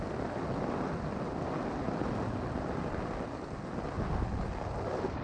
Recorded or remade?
recorded